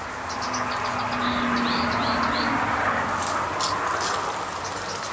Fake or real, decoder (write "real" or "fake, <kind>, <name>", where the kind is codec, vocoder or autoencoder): real